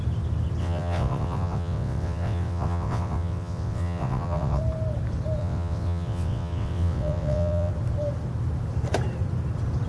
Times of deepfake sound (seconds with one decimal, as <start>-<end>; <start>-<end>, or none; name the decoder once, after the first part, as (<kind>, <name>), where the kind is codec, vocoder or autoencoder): 0.6-4.6 (vocoder, WaveNeXt); 5.4-7.7